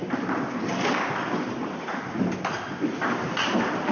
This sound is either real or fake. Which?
real